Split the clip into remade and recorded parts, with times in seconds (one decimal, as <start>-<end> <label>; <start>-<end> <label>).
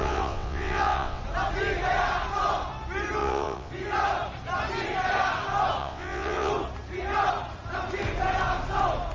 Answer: 0.0-1.2 remade; 1.2-3.2 recorded; 3.2-3.7 remade; 3.7-5.8 recorded; 5.8-6.5 remade; 6.5-9.1 recorded